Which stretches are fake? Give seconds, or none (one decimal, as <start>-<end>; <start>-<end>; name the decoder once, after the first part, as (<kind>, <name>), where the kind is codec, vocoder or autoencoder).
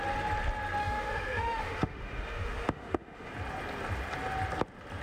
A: 0.8-3.3 (autoencoder, DAC-VAE)